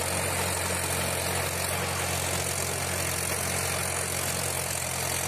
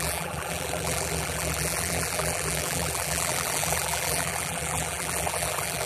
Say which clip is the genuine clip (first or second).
first